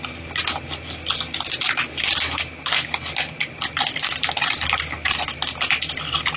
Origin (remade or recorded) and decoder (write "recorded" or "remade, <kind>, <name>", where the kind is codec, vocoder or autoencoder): recorded